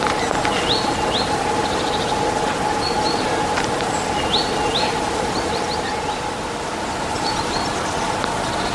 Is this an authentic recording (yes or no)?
yes